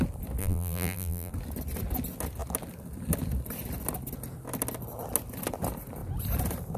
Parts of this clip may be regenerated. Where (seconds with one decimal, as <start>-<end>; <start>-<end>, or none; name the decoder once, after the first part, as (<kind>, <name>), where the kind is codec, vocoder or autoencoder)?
0.4-1.3 (vocoder, BigVGAN v2)